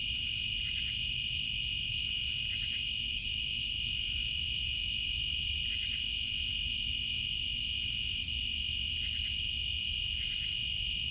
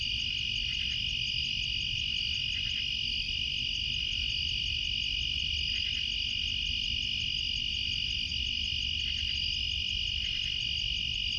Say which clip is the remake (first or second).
first